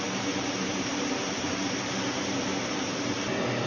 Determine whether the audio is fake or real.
fake